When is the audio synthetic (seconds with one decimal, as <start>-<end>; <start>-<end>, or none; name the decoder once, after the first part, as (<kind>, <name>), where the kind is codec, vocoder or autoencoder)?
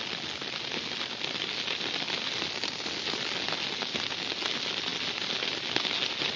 none